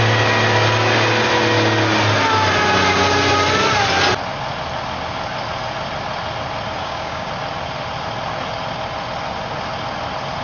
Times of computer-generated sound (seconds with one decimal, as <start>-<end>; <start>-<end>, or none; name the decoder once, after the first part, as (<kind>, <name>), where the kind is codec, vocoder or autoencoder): 6.8-7.3 (codec, DAC)

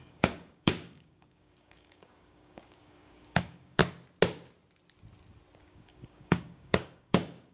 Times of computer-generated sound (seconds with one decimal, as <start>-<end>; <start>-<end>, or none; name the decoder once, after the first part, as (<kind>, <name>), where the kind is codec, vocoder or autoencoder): 0.0-3.8 (codec, DAC); 5.6-7.5

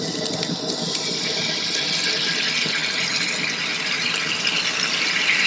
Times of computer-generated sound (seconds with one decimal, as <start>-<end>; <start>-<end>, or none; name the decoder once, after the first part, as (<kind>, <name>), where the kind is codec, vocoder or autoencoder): none

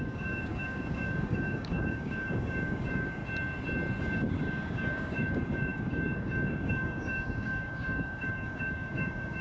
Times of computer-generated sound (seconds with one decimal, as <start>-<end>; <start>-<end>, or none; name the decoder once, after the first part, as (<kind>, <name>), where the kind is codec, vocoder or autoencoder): 0.0-3.2 (codec, DAC); 4.0-9.4

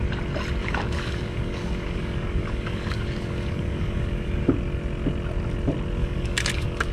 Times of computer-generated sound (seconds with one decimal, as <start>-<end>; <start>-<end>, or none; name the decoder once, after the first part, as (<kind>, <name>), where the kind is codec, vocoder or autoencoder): 0.6-4.5 (codec, DAC); 6.0-6.9

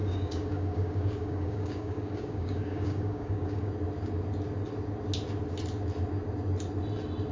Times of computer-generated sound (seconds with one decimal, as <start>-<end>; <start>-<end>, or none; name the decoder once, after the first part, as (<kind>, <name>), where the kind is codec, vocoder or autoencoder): 0.0-3.7 (codec, DAC)